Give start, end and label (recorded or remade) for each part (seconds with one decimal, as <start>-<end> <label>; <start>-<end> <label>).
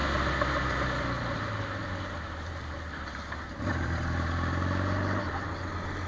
0.0-1.8 recorded; 1.8-5.5 remade; 5.5-6.1 recorded